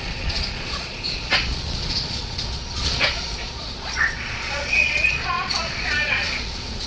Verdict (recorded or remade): remade